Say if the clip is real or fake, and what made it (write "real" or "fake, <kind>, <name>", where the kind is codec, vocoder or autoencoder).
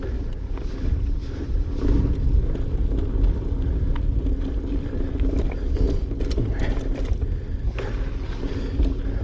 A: real